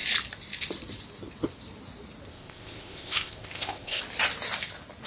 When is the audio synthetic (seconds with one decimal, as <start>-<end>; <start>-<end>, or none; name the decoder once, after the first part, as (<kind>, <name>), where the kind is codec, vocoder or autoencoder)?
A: 2.3-4.0 (codec, ZipCodec)